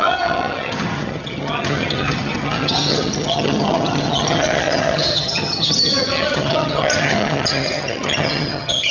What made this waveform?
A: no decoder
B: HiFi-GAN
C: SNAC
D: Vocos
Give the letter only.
B